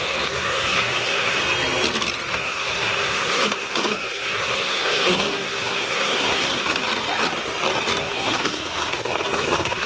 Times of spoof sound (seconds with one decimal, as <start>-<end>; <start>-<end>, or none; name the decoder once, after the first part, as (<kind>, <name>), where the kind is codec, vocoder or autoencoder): 0.0-1.4 (codec, SNAC); 2.3-6.8; 8.0-9.9

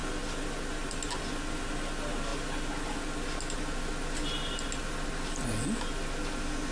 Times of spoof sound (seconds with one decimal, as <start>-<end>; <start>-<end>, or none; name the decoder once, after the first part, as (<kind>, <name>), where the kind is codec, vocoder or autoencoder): none